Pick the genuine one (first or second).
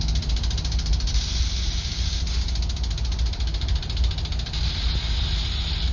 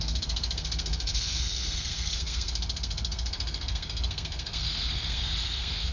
first